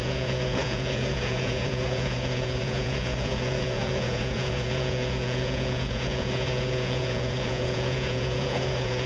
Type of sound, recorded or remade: remade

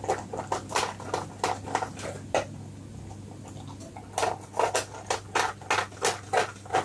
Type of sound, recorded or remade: recorded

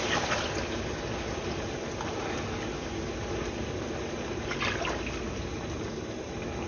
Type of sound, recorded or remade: recorded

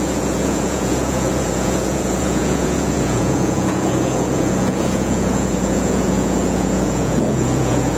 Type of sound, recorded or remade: remade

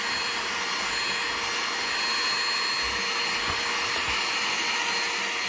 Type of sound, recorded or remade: recorded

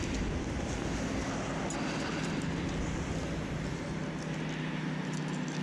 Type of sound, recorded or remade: recorded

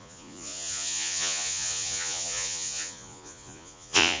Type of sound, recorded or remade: remade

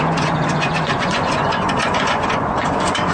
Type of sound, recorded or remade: remade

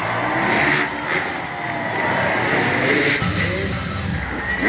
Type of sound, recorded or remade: recorded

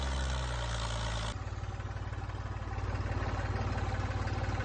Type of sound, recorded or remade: recorded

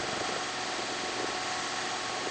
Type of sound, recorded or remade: recorded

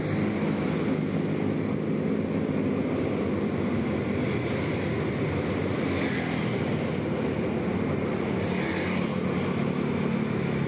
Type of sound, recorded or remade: recorded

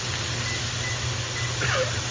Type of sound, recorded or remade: recorded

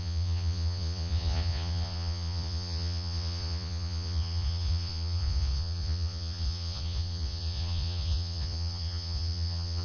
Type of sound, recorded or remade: remade